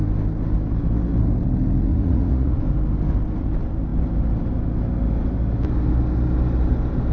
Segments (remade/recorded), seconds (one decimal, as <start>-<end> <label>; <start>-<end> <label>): 0.0-1.9 recorded; 1.9-2.5 remade; 2.5-7.1 recorded